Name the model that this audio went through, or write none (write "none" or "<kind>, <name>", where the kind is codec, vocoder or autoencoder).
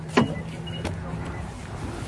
none